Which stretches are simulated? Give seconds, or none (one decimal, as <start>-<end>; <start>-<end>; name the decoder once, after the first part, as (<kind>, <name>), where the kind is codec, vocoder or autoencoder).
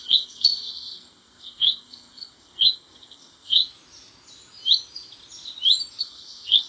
0.0-3.6 (codec, SNAC); 6.0-6.7